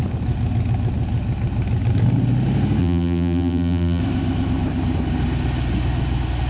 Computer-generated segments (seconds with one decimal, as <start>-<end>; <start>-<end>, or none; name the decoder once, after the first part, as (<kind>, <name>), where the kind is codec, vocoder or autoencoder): 2.8-4.0 (vocoder, BigVGAN v2)